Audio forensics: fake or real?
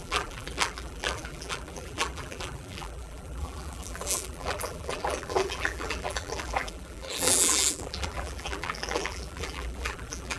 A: fake